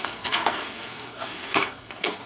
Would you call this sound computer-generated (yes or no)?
yes